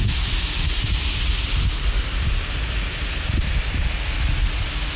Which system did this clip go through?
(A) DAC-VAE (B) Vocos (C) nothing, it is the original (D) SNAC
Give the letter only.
C